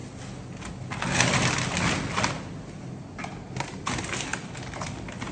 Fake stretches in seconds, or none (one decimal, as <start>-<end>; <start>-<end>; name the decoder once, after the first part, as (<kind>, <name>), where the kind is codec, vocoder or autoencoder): 3.2-5.3 (vocoder, BigVGAN v2)